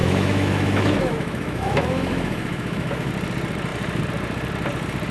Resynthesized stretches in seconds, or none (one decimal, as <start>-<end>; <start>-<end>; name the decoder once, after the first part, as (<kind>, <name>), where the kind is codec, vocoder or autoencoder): 0.0-3.1 (autoencoder, DAC-VAE)